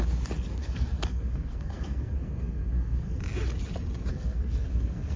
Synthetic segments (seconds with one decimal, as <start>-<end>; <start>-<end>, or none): 0.6-3.2; 4.1-5.2